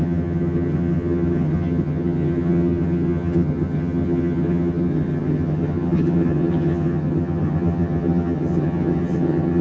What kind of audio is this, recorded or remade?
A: remade